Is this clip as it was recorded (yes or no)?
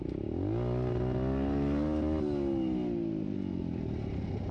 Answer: yes